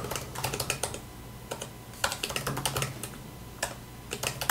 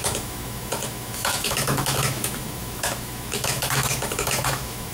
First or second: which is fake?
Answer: second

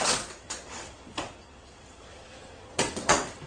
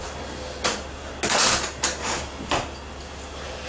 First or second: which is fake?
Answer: first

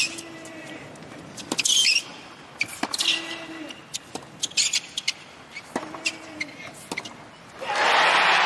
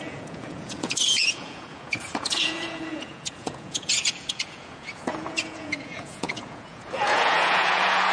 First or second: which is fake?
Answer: second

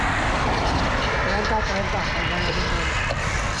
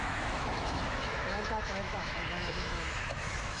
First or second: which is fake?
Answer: second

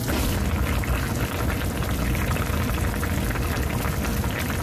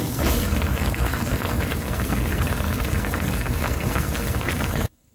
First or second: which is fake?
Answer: second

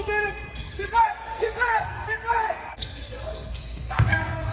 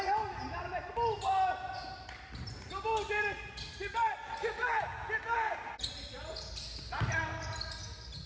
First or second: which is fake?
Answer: first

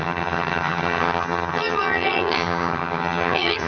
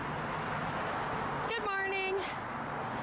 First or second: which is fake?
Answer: first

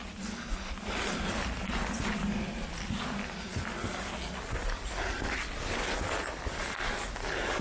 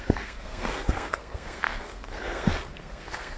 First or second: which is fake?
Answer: second